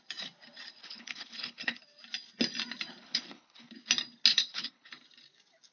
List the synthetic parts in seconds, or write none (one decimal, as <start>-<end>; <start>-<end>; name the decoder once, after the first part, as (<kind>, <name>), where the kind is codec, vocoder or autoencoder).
0.8-1.8 (codec, HILCodec); 3.0-3.7; 4.3-4.9